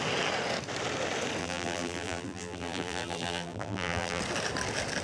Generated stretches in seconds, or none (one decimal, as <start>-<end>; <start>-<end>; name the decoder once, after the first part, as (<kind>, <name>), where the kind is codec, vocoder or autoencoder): 1.4-4.2 (vocoder, BigVGAN v2)